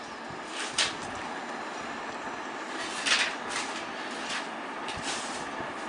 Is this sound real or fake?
real